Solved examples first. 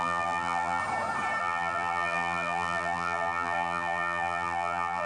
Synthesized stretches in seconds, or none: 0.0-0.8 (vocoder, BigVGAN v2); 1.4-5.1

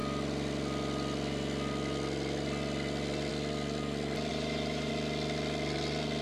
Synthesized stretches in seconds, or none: 4.3-4.9 (vocoder, BigVGAN v2)

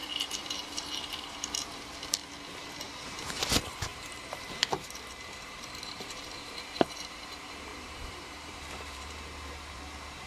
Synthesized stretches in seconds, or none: 0.0-2.2 (vocoder, BigVGAN v2); 2.8-10.3

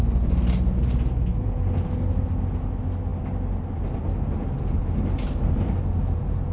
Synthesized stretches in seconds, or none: none

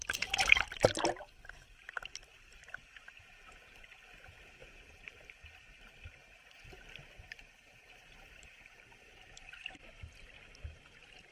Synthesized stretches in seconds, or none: 4.6-9.8 (vocoder, BigVGAN v2)

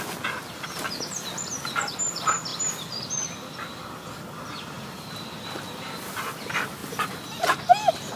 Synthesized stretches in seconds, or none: 2.5-5.0 (vocoder, BigVGAN v2); 6.8-7.6

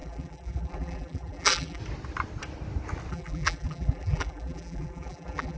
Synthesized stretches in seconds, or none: 0.0-1.8 (vocoder, BigVGAN v2); 3.1-5.6

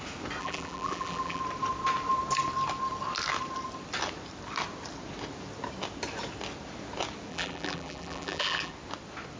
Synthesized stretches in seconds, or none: 0.4-1.4 (vocoder, BigVGAN v2); 7.3-8.7